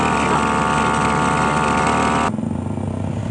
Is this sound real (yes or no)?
yes